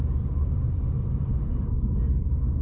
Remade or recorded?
remade